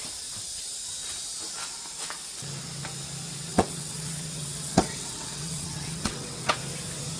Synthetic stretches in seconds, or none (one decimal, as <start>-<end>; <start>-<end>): 3.5-6.6